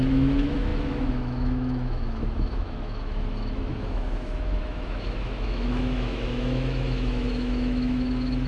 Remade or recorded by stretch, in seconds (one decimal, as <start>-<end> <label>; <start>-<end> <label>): 0.0-8.5 remade